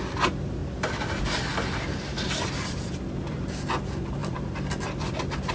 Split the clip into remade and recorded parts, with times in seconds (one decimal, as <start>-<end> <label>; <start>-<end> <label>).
0.0-0.6 recorded; 0.6-3.6 remade; 3.6-4.2 recorded; 4.2-5.5 remade